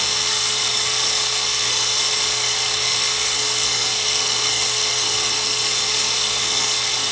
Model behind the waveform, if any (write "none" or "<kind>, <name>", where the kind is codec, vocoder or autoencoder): codec, SNAC